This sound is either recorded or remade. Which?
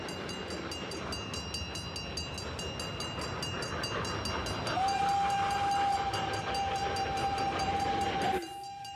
recorded